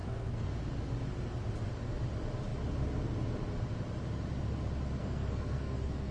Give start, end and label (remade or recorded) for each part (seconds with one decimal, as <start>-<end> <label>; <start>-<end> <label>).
0.0-0.5 remade; 0.5-5.0 recorded; 5.0-6.1 remade